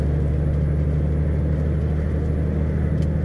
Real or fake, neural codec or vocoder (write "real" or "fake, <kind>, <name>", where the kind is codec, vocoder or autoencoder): real